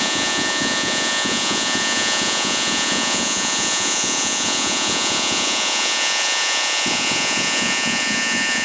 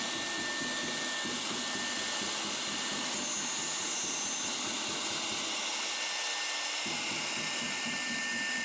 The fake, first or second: first